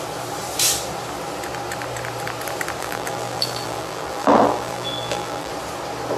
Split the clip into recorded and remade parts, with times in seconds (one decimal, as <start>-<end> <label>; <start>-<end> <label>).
0.0-2.8 recorded; 2.8-5.5 remade; 5.5-6.2 recorded